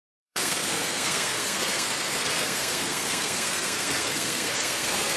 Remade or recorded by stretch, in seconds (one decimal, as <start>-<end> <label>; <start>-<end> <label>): 0.0-5.2 remade